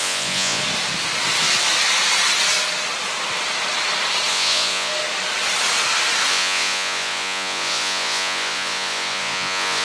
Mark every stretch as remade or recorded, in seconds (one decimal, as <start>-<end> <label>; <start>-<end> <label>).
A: 0.0-0.6 remade; 0.6-4.3 recorded; 4.3-4.9 remade; 4.9-6.3 recorded; 6.3-9.8 remade